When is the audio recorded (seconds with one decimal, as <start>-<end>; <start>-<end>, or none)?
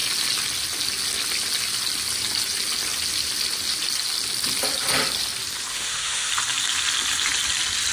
0.0-5.7; 6.3-7.9